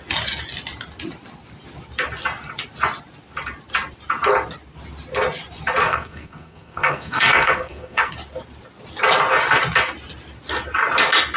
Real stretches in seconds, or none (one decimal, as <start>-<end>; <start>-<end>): 0.0-5.8; 8.1-11.4